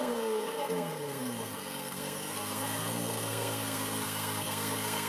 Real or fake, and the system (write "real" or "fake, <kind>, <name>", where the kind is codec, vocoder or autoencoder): fake, codec, SNAC